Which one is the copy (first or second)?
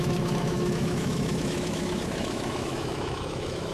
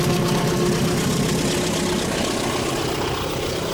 first